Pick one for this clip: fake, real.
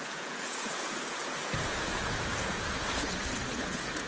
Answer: fake